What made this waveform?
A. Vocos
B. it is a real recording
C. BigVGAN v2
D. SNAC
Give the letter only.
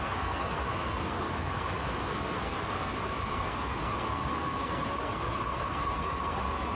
D